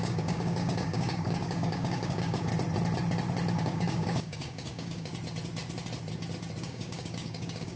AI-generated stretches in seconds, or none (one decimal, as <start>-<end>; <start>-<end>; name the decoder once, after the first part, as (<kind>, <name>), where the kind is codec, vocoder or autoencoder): 0.0-2.5 (codec, DAC); 3.5-5.1; 6.6-7.8